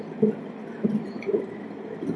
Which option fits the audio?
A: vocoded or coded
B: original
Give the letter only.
B